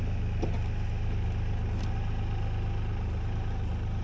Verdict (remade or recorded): recorded